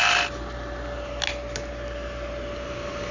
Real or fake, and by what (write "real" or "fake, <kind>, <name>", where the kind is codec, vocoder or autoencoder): real